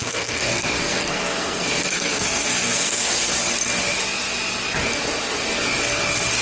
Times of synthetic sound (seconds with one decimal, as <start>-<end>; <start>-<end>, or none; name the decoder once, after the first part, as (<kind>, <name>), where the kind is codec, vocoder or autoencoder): 0.0-3.1 (codec, SNAC)